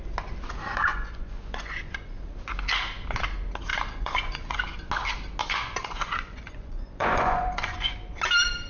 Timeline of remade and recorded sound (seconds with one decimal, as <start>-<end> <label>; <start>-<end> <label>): 0.0-0.9 recorded; 0.9-2.2 remade; 2.2-3.7 recorded; 3.7-4.6 remade; 4.6-5.4 recorded; 5.4-7.9 remade; 7.9-8.7 recorded